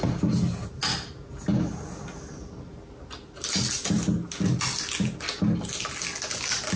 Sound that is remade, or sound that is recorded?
recorded